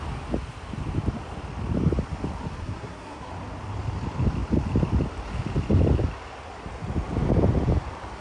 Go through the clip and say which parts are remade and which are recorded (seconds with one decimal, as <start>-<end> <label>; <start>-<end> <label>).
0.0-2.6 recorded; 2.6-3.3 remade; 3.3-8.2 recorded